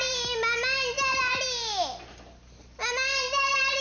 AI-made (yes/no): no